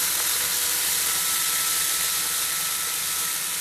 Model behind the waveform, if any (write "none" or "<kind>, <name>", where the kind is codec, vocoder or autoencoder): none